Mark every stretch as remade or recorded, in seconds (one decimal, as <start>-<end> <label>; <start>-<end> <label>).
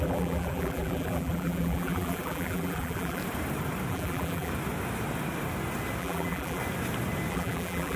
0.0-3.2 remade; 3.2-3.9 recorded; 3.9-4.5 remade; 4.5-6.0 recorded; 6.0-6.6 remade; 6.6-7.3 recorded; 7.3-8.0 remade